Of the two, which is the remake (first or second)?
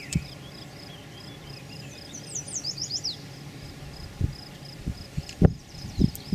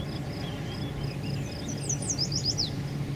first